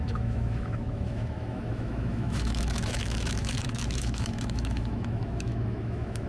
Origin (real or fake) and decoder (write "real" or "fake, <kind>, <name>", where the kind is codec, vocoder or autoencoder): fake, autoencoder, DAC-VAE